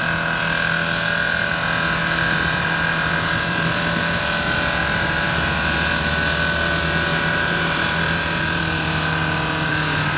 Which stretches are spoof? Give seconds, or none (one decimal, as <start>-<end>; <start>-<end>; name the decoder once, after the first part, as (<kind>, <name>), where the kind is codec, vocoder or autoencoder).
2.0-4.2 (vocoder, BigVGAN v2); 4.8-6.1; 7.1-8.6